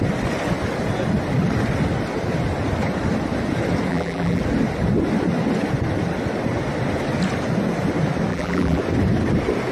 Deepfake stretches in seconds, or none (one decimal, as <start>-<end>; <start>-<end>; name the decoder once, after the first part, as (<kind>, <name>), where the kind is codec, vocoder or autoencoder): 3.9-4.4 (vocoder, BigVGAN v2); 8.3-8.8